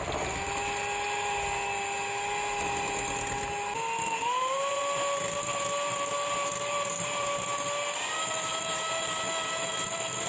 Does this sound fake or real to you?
real